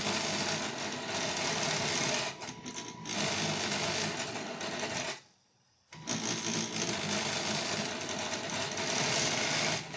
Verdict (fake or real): real